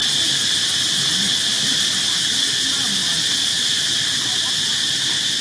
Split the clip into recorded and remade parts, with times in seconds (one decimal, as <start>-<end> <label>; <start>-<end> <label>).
0.0-5.4 recorded